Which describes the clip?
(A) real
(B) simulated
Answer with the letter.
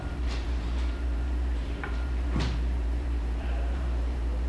B